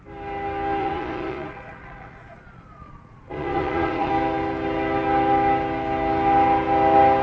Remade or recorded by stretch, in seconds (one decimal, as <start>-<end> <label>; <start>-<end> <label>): 0.0-0.8 recorded; 0.8-4.1 remade; 4.1-7.2 recorded